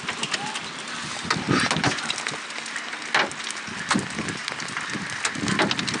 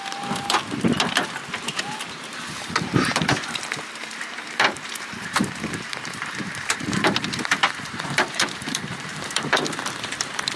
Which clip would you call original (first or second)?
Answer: first